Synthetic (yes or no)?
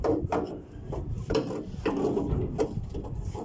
yes